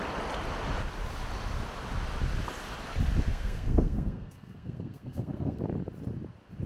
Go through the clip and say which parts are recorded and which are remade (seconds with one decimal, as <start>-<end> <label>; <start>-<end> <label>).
0.0-3.3 recorded; 3.3-5.6 remade; 5.6-6.7 recorded